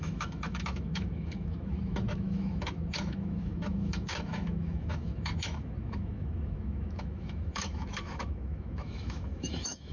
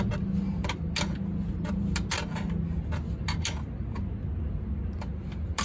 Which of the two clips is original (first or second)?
second